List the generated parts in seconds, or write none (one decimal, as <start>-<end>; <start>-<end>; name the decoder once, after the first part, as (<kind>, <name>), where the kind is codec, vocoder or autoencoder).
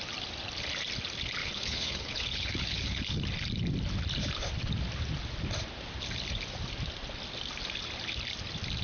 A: 1.4-3.2 (codec, HILCodec)